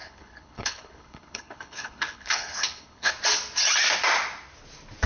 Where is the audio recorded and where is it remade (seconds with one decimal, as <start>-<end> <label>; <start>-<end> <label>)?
0.0-3.1 remade; 3.1-5.1 recorded